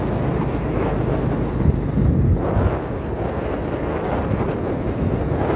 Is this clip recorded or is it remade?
recorded